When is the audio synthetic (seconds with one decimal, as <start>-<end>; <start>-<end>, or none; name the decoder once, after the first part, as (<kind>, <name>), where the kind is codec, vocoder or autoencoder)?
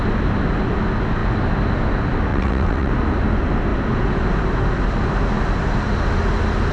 2.3-2.9 (vocoder, WaveNeXt)